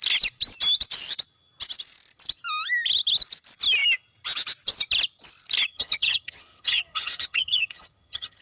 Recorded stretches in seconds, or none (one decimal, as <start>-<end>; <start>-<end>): 0.0-5.7